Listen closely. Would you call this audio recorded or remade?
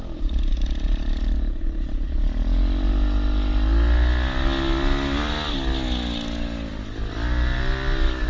recorded